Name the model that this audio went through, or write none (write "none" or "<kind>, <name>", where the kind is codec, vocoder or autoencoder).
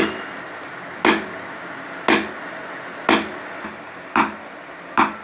none